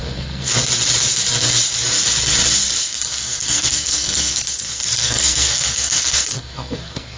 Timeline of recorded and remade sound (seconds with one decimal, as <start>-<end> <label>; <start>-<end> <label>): 0.0-0.5 remade; 0.5-2.9 recorded; 2.9-7.2 remade